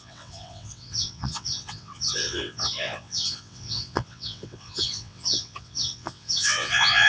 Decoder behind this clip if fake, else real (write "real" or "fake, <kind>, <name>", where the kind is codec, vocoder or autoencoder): fake, vocoder, WaveNeXt